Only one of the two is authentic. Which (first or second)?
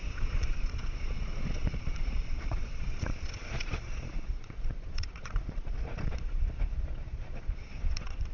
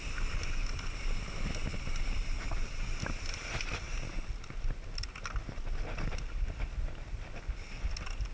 second